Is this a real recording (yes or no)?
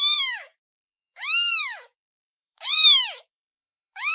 no